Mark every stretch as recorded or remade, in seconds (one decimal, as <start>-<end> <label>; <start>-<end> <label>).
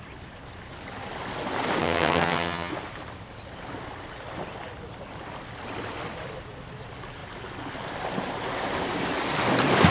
0.0-1.8 recorded; 1.8-2.7 remade; 2.7-9.9 recorded